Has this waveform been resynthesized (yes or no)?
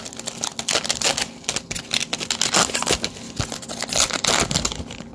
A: no